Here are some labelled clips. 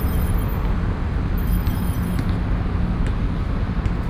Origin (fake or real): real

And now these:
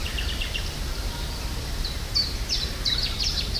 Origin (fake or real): fake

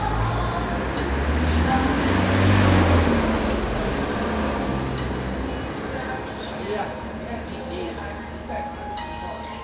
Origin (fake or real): real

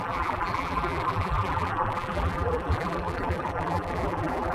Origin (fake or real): fake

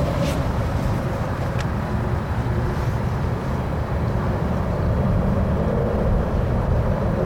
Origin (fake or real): fake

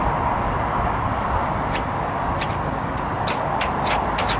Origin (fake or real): real